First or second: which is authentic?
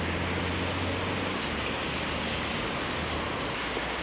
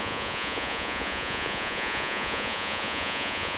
first